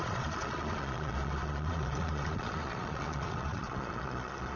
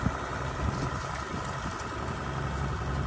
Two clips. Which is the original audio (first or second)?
second